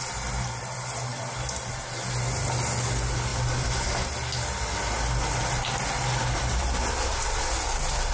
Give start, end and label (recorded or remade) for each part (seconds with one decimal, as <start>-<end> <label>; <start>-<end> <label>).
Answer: 0.0-8.1 recorded